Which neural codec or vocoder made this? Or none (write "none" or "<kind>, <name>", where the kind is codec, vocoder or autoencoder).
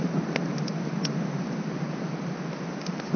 none